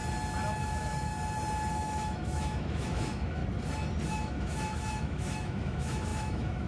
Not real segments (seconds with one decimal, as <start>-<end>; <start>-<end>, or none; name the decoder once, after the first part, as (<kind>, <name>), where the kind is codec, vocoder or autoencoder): 0.6-1.1 (autoencoder, DAC-VAE); 1.7-3.4; 4.1-6.7